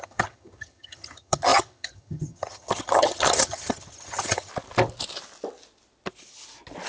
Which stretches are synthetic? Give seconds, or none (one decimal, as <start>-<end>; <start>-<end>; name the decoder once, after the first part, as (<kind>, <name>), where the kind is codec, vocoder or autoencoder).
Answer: 0.0-4.5 (vocoder, HiFi-GAN)

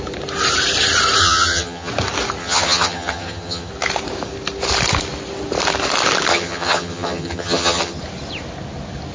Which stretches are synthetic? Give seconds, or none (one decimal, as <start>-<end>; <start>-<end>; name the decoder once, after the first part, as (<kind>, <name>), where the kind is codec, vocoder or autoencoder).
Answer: 1.2-1.9 (vocoder, HiFi-GAN); 2.4-3.7; 6.3-8.0

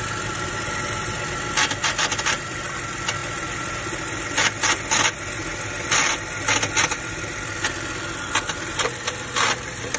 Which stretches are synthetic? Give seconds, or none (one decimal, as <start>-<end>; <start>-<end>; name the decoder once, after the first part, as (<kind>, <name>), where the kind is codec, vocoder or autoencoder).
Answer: none

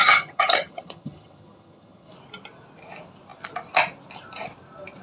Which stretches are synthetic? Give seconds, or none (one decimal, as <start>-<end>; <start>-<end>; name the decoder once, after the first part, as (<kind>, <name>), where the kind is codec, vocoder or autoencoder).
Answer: 0.0-2.1 (vocoder, HiFi-GAN)

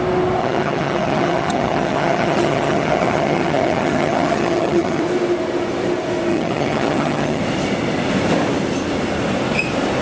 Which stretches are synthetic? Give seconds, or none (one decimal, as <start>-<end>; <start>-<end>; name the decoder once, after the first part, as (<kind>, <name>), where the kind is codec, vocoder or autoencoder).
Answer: 0.4-5.0 (vocoder, HiFi-GAN); 6.3-7.4

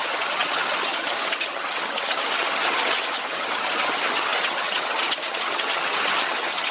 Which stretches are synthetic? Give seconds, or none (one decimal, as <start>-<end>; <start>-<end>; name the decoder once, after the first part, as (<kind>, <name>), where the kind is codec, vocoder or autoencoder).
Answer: 0.0-6.7 (vocoder, HiFi-GAN)

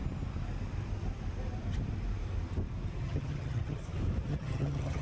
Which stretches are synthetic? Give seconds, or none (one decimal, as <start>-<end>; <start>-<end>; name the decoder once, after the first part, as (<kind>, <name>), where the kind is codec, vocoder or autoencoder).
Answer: 3.0-3.8 (vocoder, HiFi-GAN); 4.3-5.0

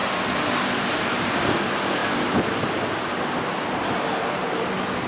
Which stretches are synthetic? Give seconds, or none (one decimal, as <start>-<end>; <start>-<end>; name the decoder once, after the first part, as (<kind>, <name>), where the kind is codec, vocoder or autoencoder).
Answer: none